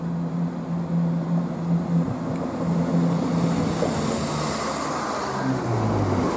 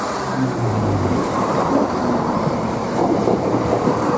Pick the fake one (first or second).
second